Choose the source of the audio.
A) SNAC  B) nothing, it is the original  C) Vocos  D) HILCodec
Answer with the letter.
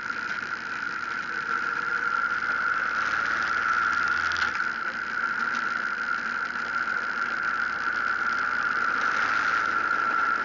B